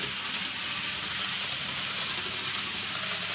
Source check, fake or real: real